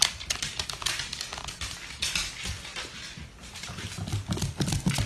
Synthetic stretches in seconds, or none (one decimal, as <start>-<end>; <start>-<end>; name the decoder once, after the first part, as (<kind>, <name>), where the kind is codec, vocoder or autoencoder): none